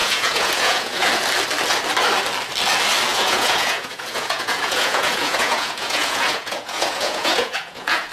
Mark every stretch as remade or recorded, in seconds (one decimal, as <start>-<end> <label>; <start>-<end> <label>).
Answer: 0.0-1.1 remade; 1.1-3.1 recorded; 3.1-8.1 remade